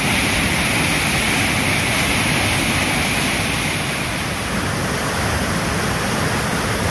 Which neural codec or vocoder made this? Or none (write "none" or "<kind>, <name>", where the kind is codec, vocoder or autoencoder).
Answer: none